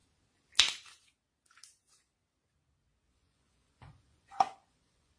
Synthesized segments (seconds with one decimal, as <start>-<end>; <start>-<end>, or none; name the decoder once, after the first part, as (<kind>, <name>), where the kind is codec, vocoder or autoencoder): 3.1-5.2 (vocoder, Vocos)